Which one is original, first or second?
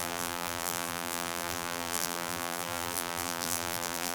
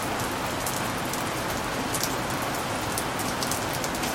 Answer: second